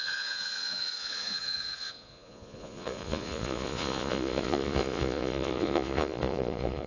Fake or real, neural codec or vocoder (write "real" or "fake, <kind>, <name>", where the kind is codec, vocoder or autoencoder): fake, vocoder, Vocos